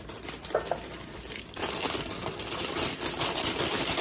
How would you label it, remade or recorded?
recorded